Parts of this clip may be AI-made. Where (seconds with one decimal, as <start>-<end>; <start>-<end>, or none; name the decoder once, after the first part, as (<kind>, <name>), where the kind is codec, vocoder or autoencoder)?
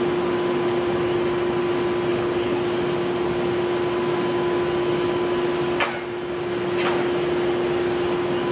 2.1-2.6 (codec, HILCodec)